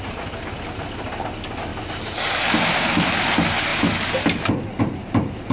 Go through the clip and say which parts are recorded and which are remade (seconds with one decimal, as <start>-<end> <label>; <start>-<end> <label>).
0.0-5.5 recorded